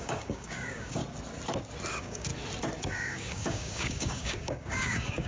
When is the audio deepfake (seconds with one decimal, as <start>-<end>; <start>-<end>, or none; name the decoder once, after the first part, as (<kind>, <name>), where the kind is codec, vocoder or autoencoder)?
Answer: 0.0-1.0 (codec, DAC); 1.9-2.3; 2.8-5.3